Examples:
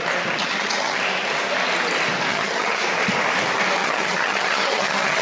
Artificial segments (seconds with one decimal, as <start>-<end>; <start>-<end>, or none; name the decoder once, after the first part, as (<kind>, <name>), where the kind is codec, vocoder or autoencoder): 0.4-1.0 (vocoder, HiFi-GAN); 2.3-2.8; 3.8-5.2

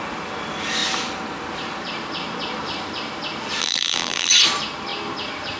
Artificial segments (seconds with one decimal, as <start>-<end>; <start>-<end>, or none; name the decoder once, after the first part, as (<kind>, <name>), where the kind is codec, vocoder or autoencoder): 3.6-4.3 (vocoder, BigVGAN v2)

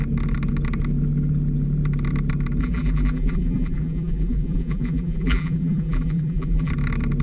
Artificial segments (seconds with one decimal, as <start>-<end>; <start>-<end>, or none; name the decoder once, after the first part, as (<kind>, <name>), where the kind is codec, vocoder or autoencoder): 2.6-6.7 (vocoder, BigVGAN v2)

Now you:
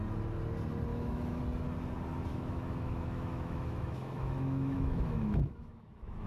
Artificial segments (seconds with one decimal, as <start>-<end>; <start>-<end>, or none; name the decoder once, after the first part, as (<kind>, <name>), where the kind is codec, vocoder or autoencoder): 0.9-1.4 (autoencoder, DAC-VAE); 2.3-6.3

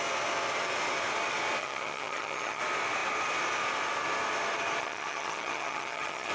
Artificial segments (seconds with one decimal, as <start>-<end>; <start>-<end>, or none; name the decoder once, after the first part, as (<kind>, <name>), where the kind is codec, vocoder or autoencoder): 1.6-2.6 (vocoder, HiFi-GAN); 4.8-6.3

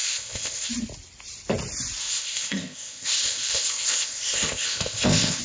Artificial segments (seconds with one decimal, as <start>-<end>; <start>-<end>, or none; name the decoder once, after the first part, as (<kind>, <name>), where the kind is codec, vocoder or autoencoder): 0.0-0.7 (codec, ZipCodec); 2.0-5.4

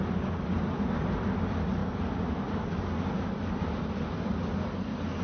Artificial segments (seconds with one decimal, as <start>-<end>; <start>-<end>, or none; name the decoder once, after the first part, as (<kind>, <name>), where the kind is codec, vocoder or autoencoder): none

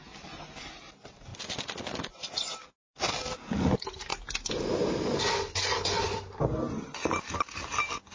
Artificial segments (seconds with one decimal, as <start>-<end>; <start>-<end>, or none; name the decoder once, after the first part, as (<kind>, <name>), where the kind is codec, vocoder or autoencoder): none